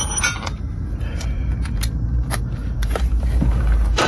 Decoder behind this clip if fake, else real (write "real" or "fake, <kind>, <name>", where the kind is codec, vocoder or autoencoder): fake, vocoder, BigVGAN v2